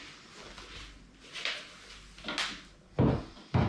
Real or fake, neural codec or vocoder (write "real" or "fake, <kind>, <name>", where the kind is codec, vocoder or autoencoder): real